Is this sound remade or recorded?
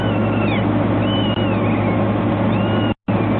recorded